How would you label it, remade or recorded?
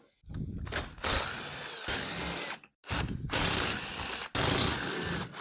recorded